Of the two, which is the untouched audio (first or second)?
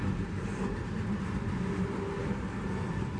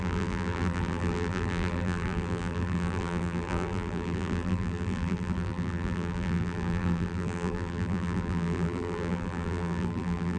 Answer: first